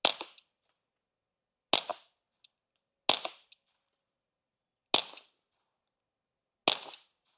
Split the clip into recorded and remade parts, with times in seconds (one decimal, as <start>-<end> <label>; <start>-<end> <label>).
0.0-7.4 recorded

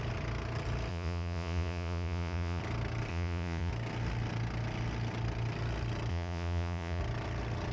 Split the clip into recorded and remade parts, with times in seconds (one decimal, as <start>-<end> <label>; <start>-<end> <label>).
0.0-0.9 recorded; 0.9-2.6 remade; 2.6-3.1 recorded; 3.1-3.7 remade; 3.7-6.1 recorded; 6.1-7.0 remade; 7.0-7.7 recorded